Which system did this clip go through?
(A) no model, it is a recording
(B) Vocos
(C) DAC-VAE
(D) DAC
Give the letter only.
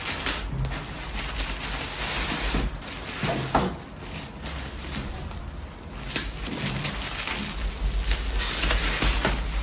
A